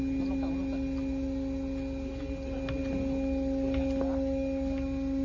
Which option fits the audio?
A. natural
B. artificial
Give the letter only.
A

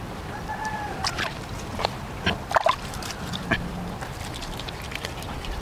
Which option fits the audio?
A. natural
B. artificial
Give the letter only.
A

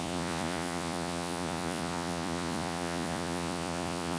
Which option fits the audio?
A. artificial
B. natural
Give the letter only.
A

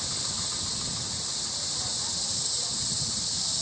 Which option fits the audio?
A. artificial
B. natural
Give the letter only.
B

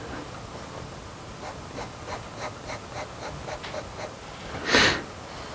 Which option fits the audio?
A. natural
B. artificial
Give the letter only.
A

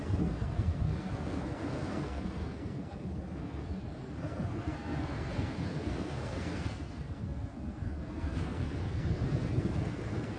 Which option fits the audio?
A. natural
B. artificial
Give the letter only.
B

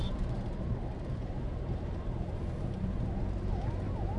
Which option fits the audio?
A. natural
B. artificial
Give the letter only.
B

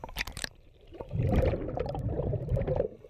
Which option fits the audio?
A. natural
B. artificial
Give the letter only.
B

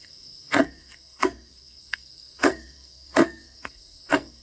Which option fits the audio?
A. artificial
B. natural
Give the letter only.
A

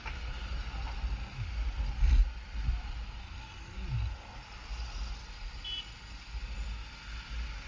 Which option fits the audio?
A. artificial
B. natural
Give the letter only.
B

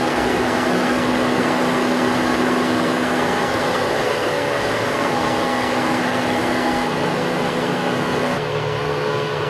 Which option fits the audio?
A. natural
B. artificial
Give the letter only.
B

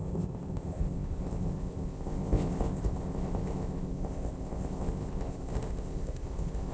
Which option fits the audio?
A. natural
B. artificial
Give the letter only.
B